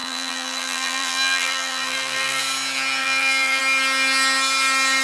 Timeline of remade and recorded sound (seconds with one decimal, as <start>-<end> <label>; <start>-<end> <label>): 0.0-2.4 remade; 2.4-3.0 recorded; 3.0-3.6 remade; 3.6-5.0 recorded